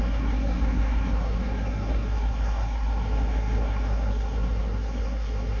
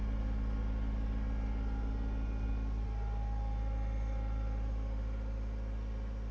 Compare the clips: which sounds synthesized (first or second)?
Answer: first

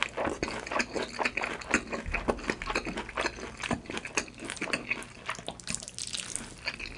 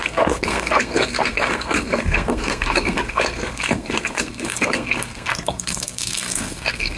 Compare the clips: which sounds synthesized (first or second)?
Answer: second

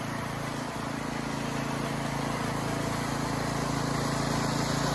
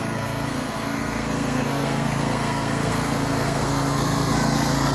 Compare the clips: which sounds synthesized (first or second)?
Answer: second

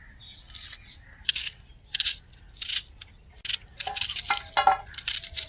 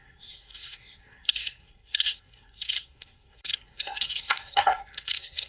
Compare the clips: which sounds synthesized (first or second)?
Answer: second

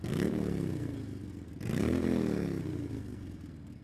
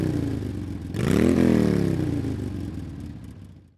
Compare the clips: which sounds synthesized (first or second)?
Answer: first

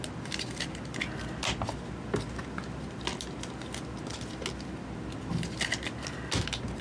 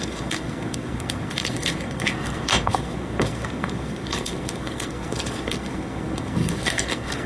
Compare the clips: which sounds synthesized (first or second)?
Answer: second